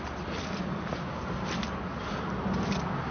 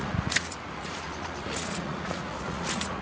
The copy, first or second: second